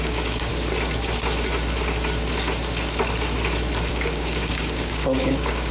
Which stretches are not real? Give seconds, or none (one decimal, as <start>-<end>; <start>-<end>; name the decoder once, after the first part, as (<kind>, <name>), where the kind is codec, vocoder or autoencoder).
0.0-0.5 (codec, DAC); 3.9-5.7